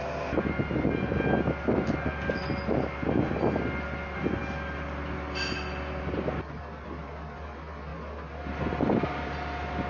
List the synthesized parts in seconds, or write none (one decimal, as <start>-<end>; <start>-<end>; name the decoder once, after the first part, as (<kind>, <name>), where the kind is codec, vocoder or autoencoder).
none